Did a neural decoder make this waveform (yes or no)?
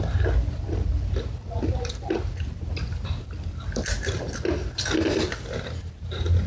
no